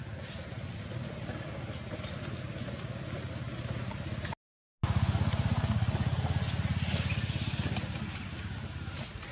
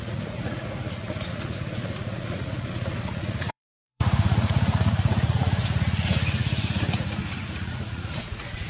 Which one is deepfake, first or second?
second